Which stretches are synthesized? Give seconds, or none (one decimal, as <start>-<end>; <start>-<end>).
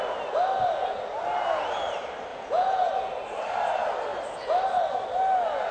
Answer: 2.3-2.9